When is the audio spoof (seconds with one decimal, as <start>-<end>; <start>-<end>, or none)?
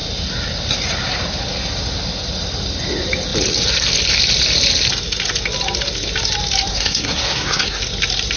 6.7-7.8